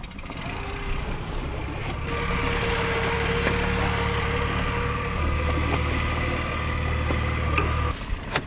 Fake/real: real